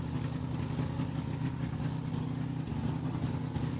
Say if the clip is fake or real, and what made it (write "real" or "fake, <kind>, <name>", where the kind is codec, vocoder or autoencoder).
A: real